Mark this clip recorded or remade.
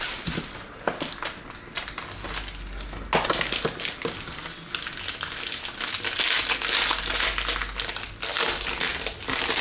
recorded